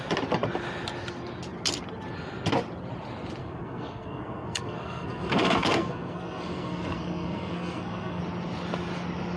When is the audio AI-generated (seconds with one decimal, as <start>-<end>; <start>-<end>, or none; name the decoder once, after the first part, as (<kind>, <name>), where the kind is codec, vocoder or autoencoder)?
3.4-8.2 (codec, SNAC)